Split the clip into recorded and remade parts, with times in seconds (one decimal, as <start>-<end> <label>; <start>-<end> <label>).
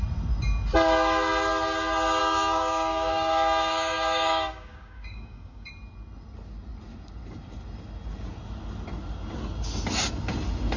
0.0-2.2 recorded; 2.2-5.7 remade; 5.7-10.8 recorded